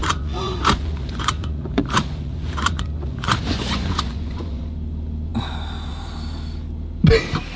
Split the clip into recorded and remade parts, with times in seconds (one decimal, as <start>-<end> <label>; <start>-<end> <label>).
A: 0.0-4.6 remade; 4.6-7.6 recorded